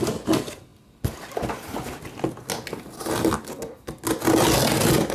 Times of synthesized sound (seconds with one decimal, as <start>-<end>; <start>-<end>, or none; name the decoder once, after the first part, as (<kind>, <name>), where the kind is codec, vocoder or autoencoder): none